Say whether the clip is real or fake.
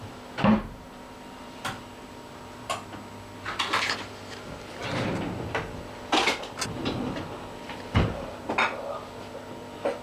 real